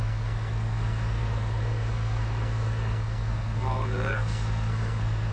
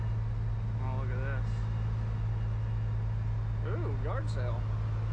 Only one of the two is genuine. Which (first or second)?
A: second